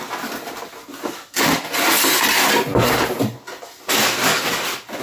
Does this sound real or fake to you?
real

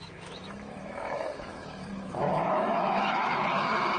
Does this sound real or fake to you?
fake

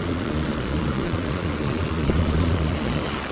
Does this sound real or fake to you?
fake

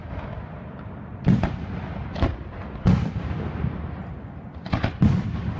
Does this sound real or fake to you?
real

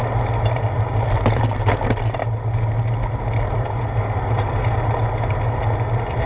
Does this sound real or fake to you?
real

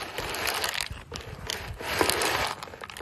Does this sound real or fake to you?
real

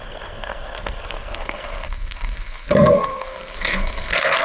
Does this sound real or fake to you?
fake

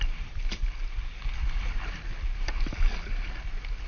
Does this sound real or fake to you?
real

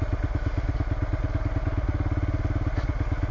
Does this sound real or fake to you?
real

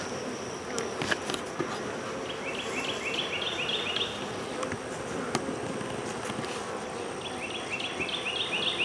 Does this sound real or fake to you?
real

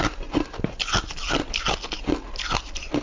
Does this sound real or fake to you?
real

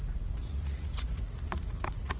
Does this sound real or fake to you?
fake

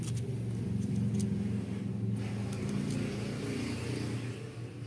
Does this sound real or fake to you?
real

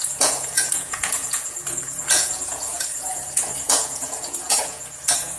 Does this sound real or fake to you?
fake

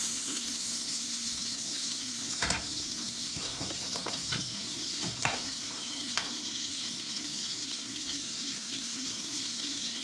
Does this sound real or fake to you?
fake